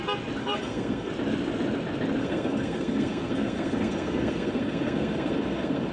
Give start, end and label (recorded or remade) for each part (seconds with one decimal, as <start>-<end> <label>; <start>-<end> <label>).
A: 0.0-0.4 recorded; 0.4-1.1 remade; 1.1-2.2 recorded; 2.2-5.9 remade

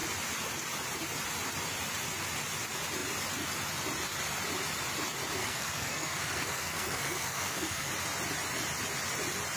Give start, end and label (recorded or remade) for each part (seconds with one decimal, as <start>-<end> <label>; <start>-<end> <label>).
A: 0.0-5.4 recorded; 5.4-7.9 remade; 7.9-9.6 recorded

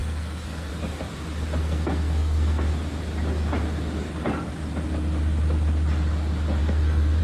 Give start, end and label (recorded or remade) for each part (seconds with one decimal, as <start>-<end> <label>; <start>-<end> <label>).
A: 0.0-0.7 remade; 0.7-1.6 recorded; 1.6-2.7 remade; 2.7-6.6 recorded; 6.6-7.2 remade